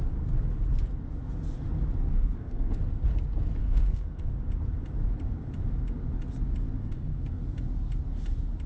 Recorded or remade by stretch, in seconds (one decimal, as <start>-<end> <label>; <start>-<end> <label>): 0.0-2.1 recorded; 2.1-2.8 remade; 2.8-3.6 recorded; 3.6-4.3 remade; 4.3-6.8 recorded; 6.8-7.4 remade; 7.4-8.7 recorded